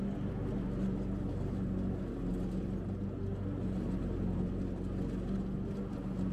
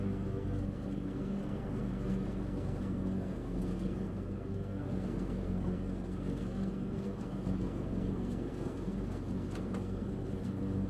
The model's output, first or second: second